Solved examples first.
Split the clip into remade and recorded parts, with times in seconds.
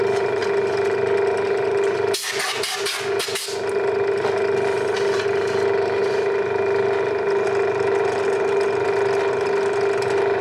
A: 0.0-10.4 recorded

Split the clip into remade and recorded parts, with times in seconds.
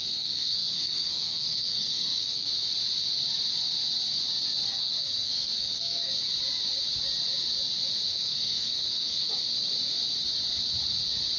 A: 0.0-2.5 remade; 2.5-4.7 recorded; 4.7-6.1 remade; 6.1-8.1 recorded; 8.1-9.3 remade; 9.3-11.4 recorded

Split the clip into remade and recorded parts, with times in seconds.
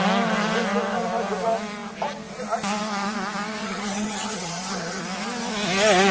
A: 0.0-3.6 recorded; 3.6-5.0 remade; 5.0-6.1 recorded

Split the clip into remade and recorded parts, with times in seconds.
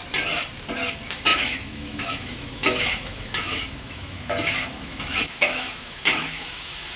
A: 0.0-0.9 recorded; 0.9-7.0 remade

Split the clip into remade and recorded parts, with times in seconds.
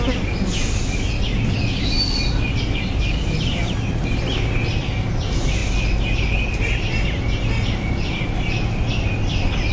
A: 0.0-9.7 recorded